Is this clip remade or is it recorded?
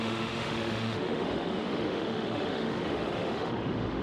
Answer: remade